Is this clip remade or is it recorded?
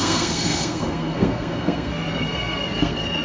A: remade